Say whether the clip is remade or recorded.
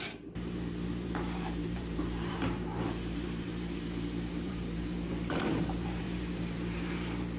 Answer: remade